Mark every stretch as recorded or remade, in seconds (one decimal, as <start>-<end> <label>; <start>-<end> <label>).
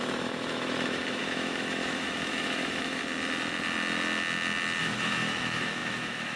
0.0-3.0 remade; 3.0-4.8 recorded; 4.8-6.4 remade